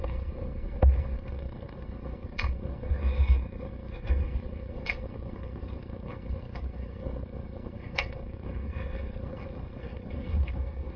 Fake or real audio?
fake